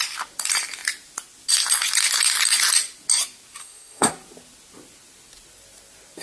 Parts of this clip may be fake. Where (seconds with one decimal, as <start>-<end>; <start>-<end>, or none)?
3.6-4.1